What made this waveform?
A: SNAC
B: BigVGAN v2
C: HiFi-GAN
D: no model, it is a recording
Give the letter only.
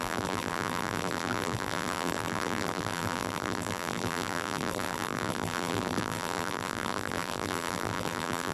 B